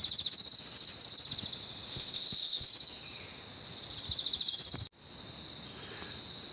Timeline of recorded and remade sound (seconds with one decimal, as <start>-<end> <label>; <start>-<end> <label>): 0.0-1.9 recorded; 1.9-2.7 remade; 2.7-6.5 recorded